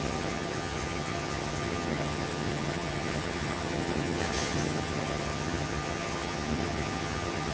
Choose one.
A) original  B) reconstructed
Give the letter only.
B